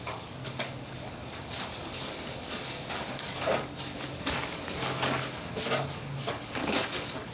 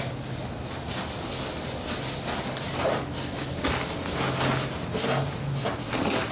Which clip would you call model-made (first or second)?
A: first